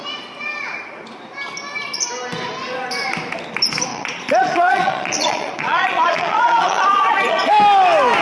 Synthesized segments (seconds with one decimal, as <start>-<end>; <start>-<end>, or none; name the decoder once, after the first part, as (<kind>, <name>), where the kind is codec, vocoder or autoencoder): 3.9-7.5 (vocoder, Vocos)